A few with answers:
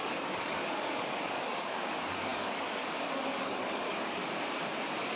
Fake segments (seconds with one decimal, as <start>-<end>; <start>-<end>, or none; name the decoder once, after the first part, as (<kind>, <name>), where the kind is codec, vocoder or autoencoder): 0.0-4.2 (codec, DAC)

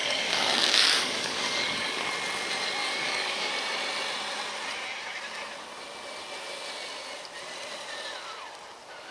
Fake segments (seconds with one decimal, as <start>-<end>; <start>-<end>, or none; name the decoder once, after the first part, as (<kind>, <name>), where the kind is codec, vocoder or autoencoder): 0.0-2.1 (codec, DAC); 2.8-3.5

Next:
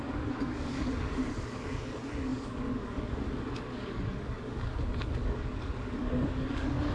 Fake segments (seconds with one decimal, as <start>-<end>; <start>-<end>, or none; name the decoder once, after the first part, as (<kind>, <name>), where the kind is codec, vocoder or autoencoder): 0.0-6.9 (codec, DAC)

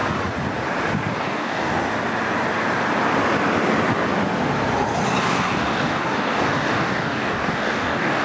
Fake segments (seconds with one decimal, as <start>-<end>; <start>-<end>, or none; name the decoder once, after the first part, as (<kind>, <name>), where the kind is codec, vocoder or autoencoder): 1.1-1.8 (codec, DAC); 5.2-8.2

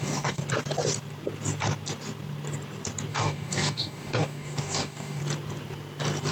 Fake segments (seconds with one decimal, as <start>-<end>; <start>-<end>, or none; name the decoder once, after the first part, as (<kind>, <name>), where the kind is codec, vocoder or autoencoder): 0.0-0.4 (codec, DAC); 3.1-5.2

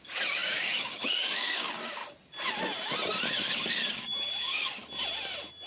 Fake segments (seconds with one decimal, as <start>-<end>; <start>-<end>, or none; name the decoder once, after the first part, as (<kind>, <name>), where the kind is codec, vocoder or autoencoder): 0.0-2.0 (codec, DAC); 3.3-4.8